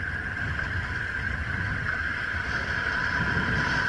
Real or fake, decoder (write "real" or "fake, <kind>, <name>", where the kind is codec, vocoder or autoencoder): real